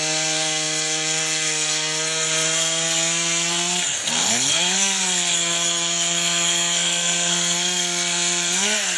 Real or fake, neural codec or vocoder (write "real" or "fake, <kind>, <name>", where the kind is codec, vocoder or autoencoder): fake, codec, SNAC